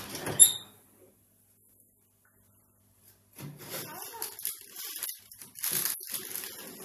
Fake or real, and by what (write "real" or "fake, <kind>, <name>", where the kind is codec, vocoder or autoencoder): real